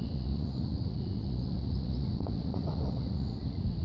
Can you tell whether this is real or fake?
fake